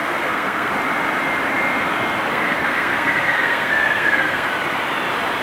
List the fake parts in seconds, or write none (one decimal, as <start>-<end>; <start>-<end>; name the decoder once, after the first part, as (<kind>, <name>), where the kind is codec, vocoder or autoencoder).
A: 0.0-0.7 (codec, SNAC); 2.3-4.5